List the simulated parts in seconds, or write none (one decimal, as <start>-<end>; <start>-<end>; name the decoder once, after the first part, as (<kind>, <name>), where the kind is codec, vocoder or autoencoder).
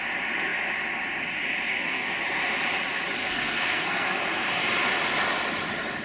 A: 1.7-2.2 (codec, SNAC); 3.2-4.2